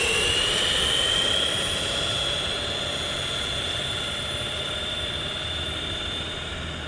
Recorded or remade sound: recorded